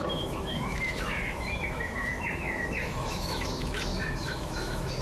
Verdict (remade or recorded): remade